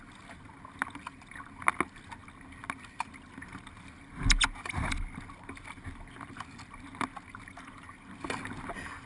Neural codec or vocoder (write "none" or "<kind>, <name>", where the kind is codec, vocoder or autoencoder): none